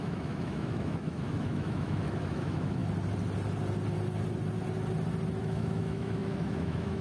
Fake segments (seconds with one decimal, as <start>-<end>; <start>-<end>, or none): 0.0-2.8; 5.4-7.0